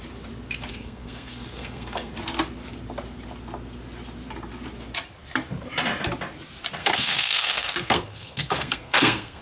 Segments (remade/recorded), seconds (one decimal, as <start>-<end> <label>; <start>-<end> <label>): 0.0-0.7 recorded; 0.7-2.1 remade; 2.1-6.8 recorded; 6.8-9.4 remade